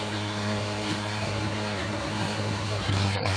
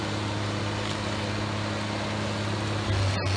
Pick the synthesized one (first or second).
first